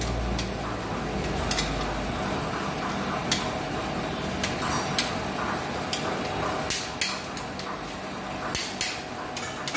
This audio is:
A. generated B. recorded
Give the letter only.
B